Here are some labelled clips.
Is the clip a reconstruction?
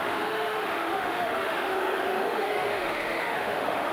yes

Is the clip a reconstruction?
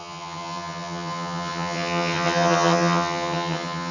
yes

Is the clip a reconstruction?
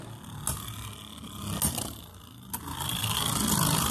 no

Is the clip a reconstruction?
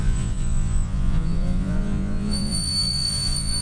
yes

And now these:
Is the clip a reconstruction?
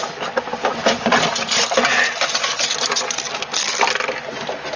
no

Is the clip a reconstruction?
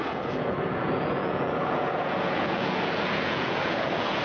yes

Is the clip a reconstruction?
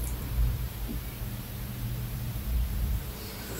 yes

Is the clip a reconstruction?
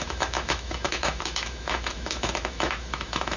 yes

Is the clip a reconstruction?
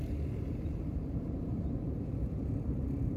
yes